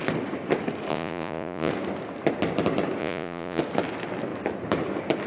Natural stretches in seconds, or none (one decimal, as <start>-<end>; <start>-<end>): 0.0-0.9; 1.7-3.0; 3.6-5.3